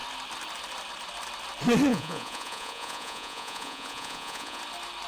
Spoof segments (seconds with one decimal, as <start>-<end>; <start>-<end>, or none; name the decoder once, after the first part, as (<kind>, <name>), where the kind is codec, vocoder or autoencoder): 1.9-4.6 (vocoder, Vocos)